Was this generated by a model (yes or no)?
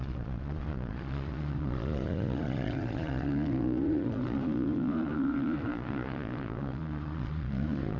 yes